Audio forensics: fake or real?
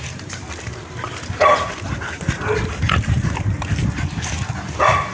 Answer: real